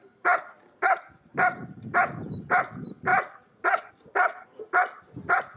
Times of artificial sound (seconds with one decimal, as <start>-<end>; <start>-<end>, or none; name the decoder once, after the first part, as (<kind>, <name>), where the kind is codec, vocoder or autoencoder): none

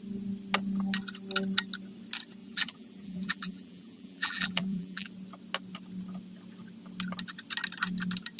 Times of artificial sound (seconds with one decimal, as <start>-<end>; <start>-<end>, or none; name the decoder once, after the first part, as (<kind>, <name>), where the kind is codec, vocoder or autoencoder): 2.4-5.1 (vocoder, BigVGAN v2)

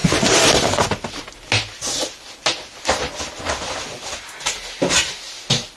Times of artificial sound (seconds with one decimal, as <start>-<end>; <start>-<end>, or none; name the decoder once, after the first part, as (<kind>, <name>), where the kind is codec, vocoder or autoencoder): 0.0-1.2 (vocoder, BigVGAN v2); 1.8-4.6

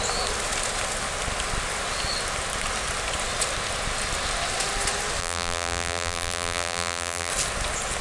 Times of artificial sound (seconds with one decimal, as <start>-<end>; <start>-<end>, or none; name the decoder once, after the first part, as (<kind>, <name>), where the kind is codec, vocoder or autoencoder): 5.2-7.3 (vocoder, BigVGAN v2)

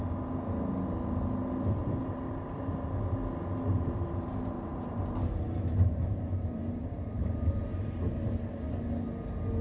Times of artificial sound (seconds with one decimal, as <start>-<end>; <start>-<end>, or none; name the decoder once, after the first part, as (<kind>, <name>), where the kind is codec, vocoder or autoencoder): 1.8-3.1 (vocoder, BigVGAN v2); 3.7-8.4

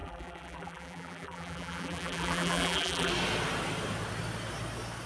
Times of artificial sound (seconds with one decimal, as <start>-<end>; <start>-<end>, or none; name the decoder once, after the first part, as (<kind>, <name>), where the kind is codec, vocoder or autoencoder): 0.0-3.1 (vocoder, BigVGAN v2)

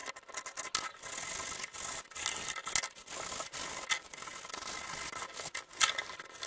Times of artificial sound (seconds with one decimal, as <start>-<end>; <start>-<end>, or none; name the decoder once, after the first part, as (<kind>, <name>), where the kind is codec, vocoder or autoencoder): none

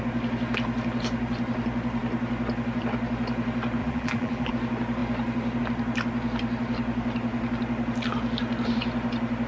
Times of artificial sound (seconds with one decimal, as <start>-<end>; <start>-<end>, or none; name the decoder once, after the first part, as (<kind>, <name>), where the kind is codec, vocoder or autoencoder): 3.8-4.5 (vocoder, BigVGAN v2)